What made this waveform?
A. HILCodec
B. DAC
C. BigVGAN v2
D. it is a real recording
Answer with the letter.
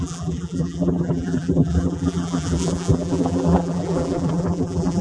C